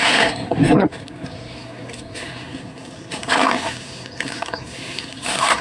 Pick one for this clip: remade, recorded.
remade